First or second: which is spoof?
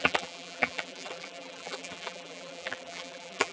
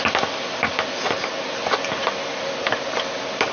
first